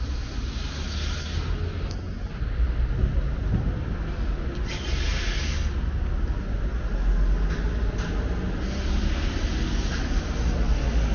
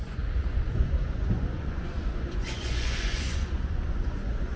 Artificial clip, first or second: second